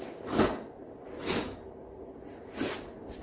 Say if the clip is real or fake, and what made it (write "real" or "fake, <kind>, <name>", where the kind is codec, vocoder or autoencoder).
real